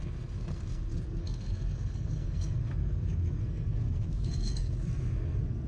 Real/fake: fake